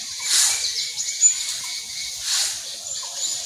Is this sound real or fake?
real